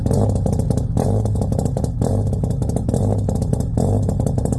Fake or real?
real